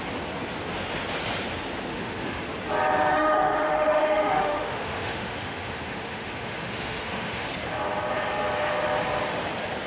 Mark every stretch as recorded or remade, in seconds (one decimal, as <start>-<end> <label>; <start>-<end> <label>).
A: 0.0-1.9 recorded; 1.9-2.4 remade; 2.4-3.1 recorded; 3.1-7.5 remade; 7.5-9.9 recorded

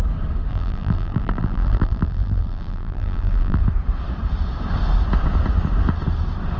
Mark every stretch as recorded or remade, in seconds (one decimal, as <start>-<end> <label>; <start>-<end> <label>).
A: 0.0-0.5 recorded; 0.5-3.6 remade; 3.6-6.6 recorded

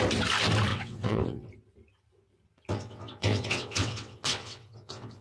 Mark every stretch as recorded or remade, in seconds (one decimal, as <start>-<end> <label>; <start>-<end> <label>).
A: 0.0-0.7 recorded; 0.7-1.5 remade; 1.5-2.7 recorded; 2.7-5.2 remade